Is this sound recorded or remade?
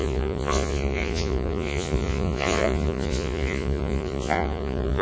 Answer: remade